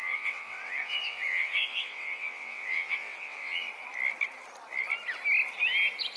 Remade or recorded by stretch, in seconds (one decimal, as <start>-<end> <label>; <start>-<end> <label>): 0.0-3.7 remade; 3.7-6.2 recorded